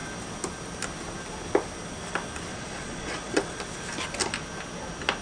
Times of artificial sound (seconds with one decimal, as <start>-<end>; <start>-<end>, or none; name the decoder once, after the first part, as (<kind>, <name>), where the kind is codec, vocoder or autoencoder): 2.5-3.6 (vocoder, Vocos)